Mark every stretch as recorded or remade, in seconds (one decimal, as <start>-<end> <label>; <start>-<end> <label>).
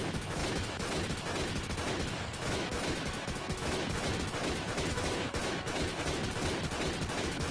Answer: 0.0-6.2 remade; 6.2-7.1 recorded; 7.1-7.5 remade